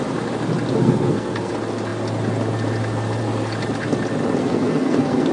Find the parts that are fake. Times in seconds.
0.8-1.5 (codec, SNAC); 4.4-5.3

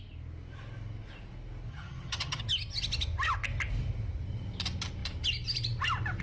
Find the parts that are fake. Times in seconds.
1.7-2.4 (vocoder, HiFi-GAN)

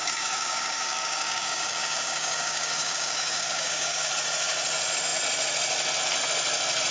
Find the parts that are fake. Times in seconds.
0.0-4.1 (codec, DAC)